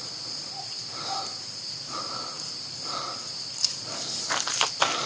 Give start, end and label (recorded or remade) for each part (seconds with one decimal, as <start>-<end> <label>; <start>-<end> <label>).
0.0-2.8 remade; 2.8-3.2 recorded; 3.2-4.5 remade; 4.5-5.1 recorded